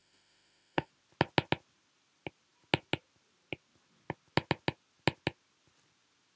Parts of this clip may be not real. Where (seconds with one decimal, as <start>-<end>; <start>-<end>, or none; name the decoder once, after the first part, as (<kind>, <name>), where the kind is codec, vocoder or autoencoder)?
0.0-0.9 (autoencoder, DAC-VAE)